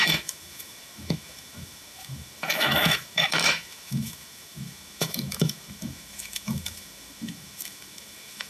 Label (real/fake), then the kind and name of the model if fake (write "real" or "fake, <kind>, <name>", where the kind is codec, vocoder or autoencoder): fake, autoencoder, DAC-VAE